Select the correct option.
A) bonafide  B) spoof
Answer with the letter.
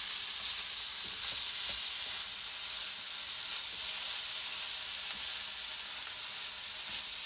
A